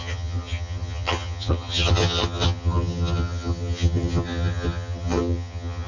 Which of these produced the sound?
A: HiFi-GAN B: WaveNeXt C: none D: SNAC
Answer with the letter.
A